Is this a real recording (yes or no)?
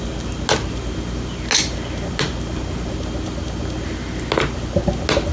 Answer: yes